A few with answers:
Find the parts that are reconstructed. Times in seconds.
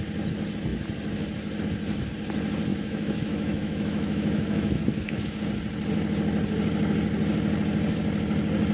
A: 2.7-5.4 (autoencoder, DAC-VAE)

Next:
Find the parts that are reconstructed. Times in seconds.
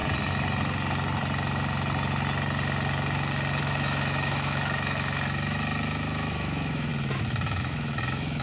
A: 3.6-6.9 (autoencoder, DAC-VAE); 7.6-8.4